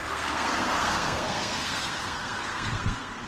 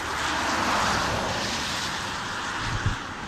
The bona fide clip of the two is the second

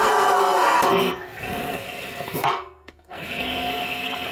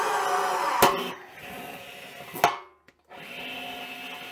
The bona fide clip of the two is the second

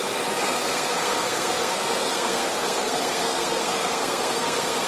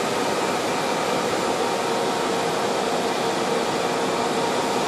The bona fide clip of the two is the second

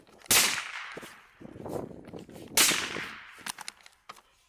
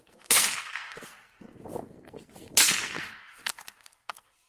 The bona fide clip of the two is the first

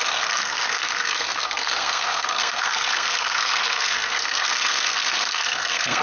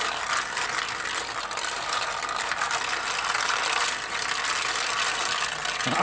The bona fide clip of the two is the second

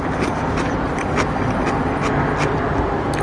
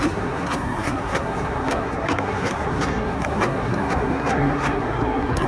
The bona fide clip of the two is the first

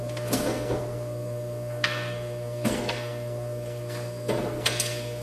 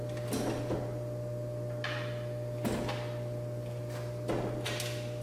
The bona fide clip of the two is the second